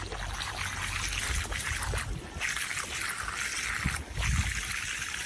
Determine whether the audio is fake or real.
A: real